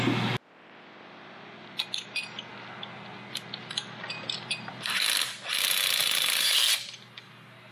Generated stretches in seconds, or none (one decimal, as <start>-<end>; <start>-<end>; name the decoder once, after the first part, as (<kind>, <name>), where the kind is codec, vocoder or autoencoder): none